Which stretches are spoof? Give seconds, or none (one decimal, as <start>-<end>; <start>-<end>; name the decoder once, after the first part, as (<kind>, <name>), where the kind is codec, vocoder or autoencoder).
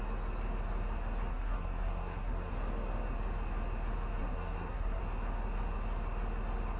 1.3-2.5 (codec, SNAC); 4.2-5.0